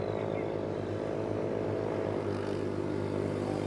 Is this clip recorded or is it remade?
recorded